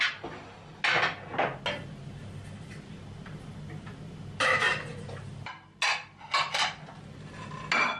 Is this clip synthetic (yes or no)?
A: no